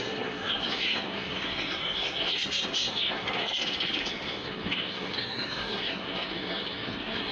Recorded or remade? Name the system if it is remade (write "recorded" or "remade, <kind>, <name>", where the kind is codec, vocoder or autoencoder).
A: remade, codec, SNAC